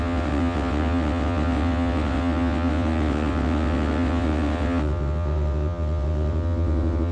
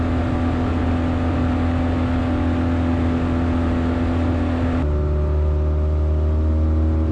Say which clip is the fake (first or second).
first